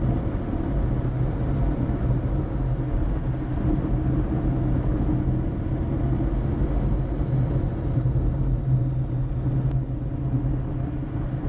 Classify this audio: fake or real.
real